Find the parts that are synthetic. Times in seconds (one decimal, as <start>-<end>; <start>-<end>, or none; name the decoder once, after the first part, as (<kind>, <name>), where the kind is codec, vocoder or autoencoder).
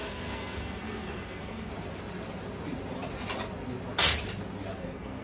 0.0-1.7 (codec, SNAC); 4.8-5.2